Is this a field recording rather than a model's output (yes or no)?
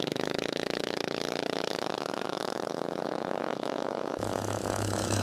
no